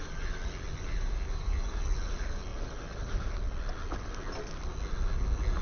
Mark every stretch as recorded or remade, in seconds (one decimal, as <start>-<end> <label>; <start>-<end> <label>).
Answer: 0.0-5.6 recorded